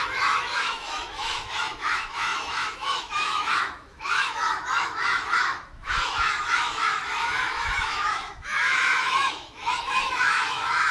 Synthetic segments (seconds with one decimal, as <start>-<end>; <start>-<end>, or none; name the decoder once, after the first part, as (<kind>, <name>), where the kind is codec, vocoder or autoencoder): 0.0-10.9 (autoencoder, DAC-VAE)